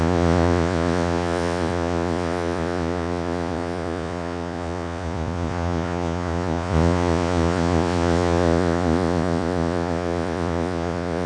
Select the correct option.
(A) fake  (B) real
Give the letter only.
A